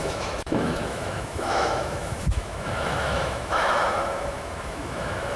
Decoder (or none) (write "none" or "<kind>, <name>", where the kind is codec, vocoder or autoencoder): autoencoder, DAC-VAE